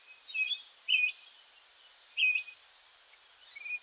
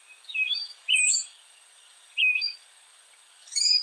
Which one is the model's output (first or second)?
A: second